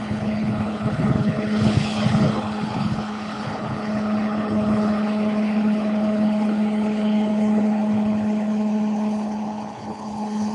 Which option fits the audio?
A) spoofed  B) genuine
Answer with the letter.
A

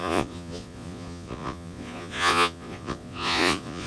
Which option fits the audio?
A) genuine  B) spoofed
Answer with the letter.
B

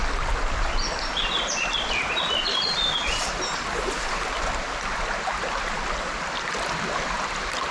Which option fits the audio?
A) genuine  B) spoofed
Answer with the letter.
A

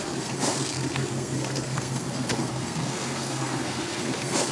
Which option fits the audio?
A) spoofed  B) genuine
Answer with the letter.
A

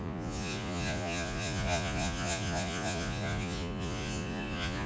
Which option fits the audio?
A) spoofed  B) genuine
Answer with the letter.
A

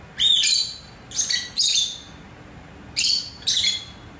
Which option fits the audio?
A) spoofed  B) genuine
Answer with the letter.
B